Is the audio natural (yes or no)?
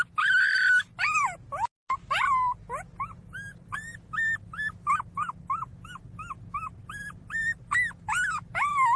yes